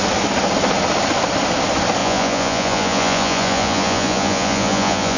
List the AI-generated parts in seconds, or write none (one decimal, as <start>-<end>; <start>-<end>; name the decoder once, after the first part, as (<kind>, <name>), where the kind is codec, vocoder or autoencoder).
2.0-5.2 (vocoder, Vocos)